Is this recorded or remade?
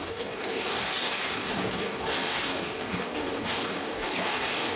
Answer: remade